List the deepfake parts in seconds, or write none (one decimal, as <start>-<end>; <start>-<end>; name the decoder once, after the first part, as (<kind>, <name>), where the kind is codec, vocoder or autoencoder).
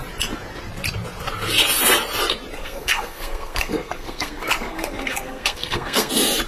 2.6-6.1 (codec, SNAC)